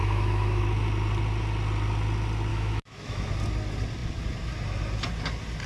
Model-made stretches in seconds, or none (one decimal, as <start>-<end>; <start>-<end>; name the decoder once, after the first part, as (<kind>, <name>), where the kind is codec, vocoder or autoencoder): 0.0-0.6 (autoencoder, DAC-VAE); 2.5-3.3